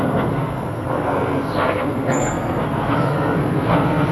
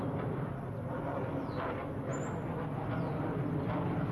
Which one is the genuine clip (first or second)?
second